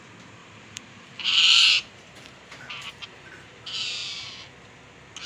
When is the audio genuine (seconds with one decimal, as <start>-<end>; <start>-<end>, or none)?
0.0-0.4; 3.6-5.3